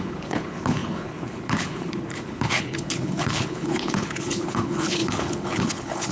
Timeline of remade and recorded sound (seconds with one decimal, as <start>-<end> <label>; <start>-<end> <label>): 0.0-6.1 remade